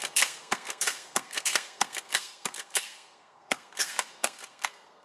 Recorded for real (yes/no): no